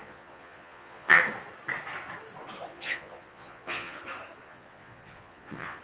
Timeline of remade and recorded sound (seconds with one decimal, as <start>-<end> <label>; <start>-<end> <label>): 0.0-1.2 remade; 1.2-2.7 recorded; 2.7-4.0 remade; 4.0-4.4 recorded; 4.4-5.8 remade